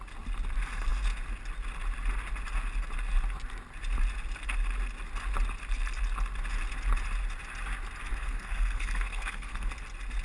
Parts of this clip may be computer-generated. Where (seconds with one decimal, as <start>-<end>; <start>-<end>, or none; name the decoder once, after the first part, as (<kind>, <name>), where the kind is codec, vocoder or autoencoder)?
8.1-9.7 (codec, SNAC)

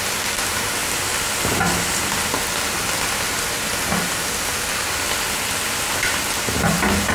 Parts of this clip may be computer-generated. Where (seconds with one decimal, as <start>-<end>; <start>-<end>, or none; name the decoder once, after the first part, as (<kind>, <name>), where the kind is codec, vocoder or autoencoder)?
none

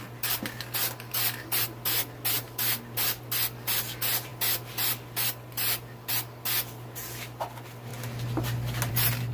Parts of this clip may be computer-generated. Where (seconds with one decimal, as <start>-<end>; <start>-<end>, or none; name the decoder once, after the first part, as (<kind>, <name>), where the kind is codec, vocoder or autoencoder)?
0.0-7.9 (vocoder, BigVGAN v2); 8.9-9.3